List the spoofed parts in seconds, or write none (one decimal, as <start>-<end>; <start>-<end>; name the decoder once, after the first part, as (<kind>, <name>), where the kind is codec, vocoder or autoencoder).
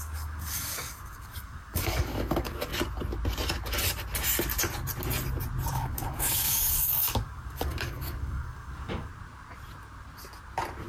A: 0.0-2.7 (codec, DAC); 5.7-9.1